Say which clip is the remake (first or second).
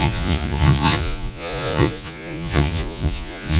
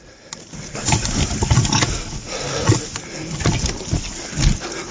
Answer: first